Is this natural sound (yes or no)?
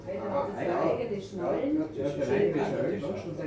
yes